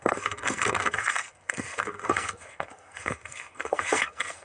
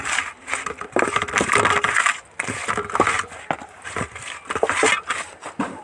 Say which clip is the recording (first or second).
second